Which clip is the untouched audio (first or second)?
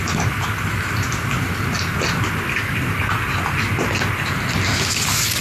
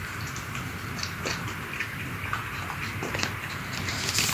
first